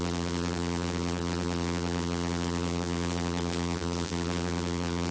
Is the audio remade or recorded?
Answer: remade